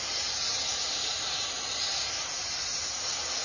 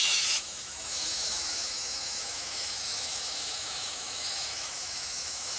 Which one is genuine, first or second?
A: first